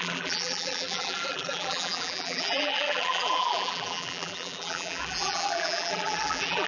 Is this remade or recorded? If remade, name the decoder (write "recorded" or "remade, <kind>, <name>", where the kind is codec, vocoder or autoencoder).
remade, vocoder, BigVGAN v2